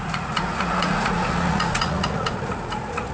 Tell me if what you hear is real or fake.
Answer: fake